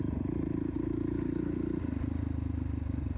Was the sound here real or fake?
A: real